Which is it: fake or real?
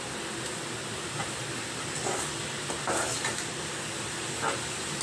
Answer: real